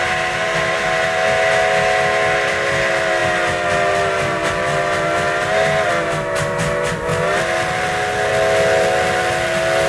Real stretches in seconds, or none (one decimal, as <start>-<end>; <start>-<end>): 0.0-9.9